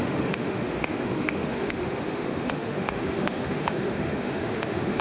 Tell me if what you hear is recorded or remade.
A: remade